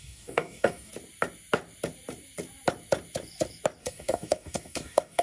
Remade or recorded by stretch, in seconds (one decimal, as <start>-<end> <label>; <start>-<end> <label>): 0.0-0.9 remade; 0.9-3.8 recorded; 3.8-5.2 remade